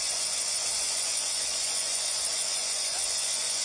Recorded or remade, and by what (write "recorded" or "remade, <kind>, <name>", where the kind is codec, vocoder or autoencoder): remade, vocoder, Vocos